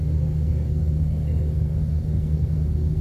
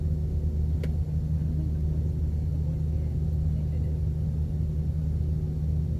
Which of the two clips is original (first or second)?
second